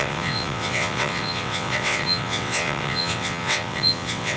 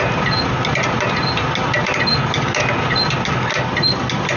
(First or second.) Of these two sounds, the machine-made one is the first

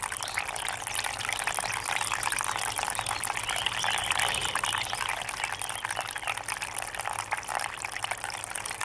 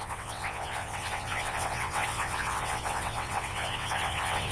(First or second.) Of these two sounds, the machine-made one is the second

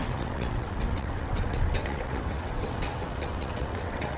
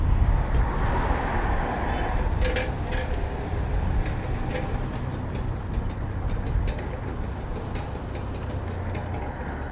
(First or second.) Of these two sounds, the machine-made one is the first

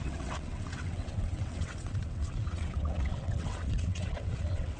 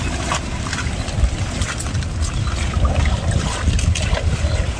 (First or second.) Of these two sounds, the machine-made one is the first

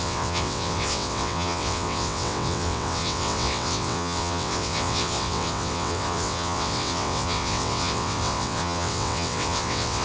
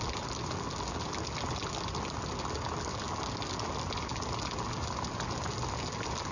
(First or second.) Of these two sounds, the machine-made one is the first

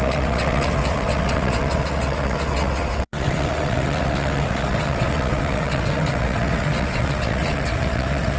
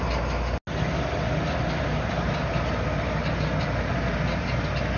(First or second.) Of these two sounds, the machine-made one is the first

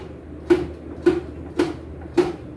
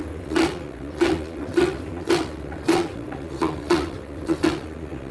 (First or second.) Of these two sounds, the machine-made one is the second